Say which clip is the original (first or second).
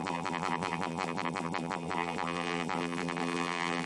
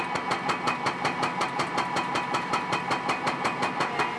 second